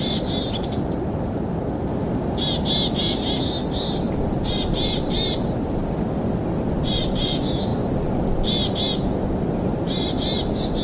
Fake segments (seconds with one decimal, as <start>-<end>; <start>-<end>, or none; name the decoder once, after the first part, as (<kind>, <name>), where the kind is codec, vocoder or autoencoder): 9.7-10.3 (vocoder, BigVGAN v2)

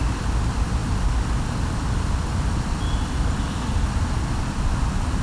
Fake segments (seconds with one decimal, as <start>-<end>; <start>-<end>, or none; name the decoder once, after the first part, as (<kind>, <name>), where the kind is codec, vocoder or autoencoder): none